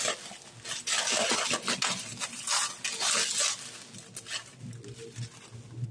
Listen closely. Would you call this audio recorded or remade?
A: recorded